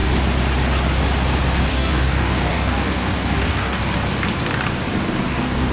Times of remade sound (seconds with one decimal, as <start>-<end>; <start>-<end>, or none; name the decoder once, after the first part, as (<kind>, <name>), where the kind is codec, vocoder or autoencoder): 1.7-3.8 (codec, DAC); 5.3-5.7